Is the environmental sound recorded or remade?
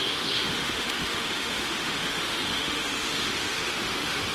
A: remade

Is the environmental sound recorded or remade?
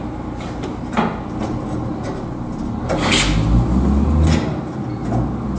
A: recorded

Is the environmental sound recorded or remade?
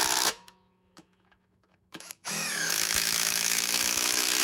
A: remade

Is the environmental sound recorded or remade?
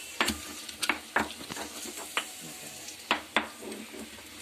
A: recorded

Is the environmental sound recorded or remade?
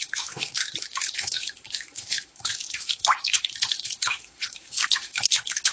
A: remade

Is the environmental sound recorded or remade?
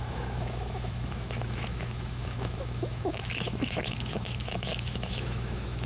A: remade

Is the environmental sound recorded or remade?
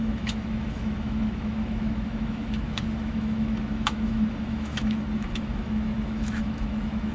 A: remade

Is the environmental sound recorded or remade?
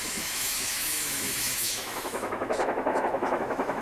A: remade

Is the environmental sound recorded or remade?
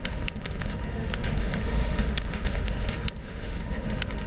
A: remade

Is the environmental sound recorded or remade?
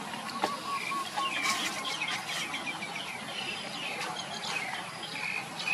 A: recorded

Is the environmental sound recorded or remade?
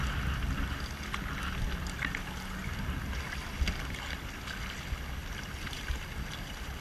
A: recorded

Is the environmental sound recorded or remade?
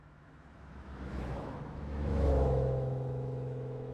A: remade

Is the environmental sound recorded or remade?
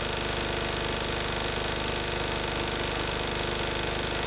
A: recorded